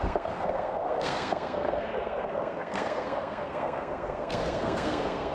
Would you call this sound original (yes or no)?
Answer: no